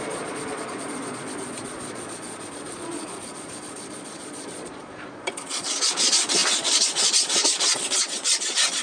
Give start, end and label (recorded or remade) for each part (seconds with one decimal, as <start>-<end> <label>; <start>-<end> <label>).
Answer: 0.0-8.8 remade